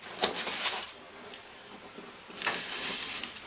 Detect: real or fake real